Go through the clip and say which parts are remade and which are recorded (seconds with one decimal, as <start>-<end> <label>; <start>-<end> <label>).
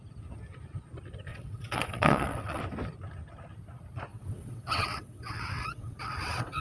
0.0-1.3 recorded; 1.3-2.6 remade; 2.6-4.1 recorded; 4.1-6.6 remade